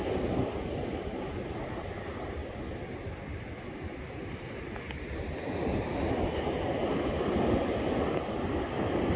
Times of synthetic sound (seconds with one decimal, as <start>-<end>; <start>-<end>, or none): none